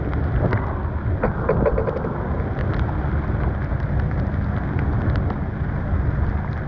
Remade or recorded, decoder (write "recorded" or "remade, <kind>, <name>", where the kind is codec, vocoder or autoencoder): recorded